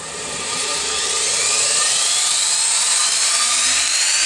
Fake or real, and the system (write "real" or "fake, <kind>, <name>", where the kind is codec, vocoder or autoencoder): fake, vocoder, BigVGAN v2